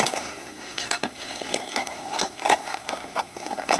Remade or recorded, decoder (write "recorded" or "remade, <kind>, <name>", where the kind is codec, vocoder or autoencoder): remade, codec, SNAC